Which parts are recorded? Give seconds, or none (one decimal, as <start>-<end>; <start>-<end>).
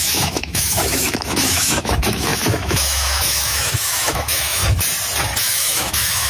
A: 4.6-5.4